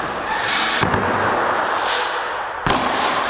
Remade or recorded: recorded